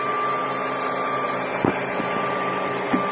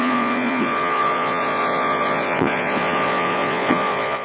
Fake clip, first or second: second